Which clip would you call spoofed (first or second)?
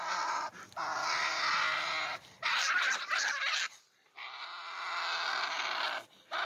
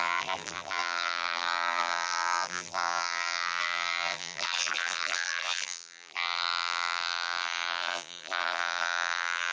second